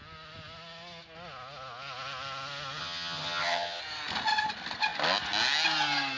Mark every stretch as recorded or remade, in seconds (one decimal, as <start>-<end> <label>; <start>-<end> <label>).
0.0-2.8 recorded; 2.8-3.8 remade; 3.8-6.2 recorded